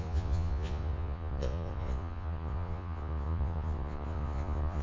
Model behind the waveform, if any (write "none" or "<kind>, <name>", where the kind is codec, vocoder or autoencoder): vocoder, Vocos